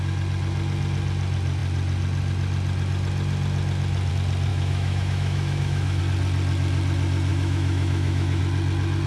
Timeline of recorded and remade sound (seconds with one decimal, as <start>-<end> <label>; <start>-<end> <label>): 0.0-4.5 recorded; 4.5-6.0 remade; 6.0-7.3 recorded; 7.3-8.4 remade; 8.4-9.1 recorded